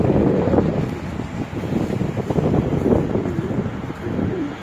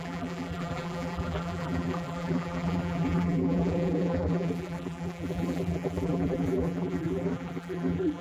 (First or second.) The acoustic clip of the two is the first